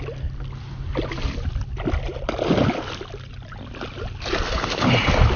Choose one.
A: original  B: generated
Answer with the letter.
A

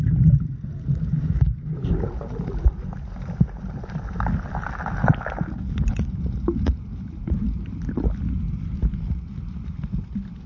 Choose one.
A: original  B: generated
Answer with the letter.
A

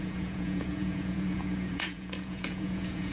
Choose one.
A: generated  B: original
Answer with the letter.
A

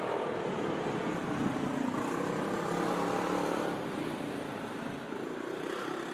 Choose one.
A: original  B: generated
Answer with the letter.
A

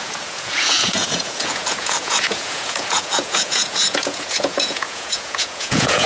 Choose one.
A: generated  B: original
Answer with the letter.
A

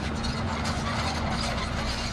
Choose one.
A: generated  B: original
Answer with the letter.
A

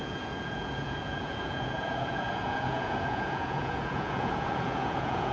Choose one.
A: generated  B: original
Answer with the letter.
A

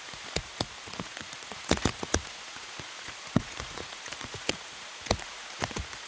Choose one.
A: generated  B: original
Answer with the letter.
A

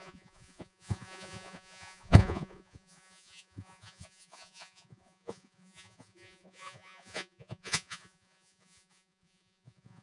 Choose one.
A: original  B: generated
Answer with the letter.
B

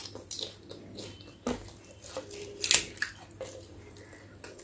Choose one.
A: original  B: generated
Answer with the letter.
A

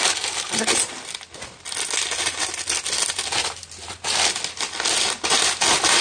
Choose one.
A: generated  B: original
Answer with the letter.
B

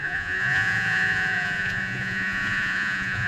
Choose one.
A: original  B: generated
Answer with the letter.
B